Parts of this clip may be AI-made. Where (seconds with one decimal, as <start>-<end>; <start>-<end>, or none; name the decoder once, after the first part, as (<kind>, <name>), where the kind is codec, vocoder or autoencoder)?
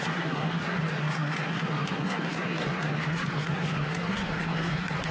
0.0-5.1 (codec, SNAC)